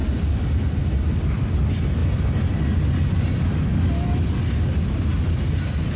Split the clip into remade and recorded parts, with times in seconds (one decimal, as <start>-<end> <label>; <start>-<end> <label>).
0.0-6.0 recorded